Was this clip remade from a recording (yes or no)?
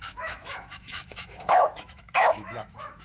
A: yes